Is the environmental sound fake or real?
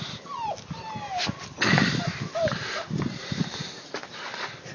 real